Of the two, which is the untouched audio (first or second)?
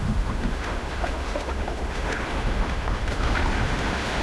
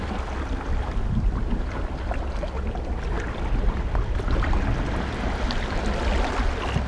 second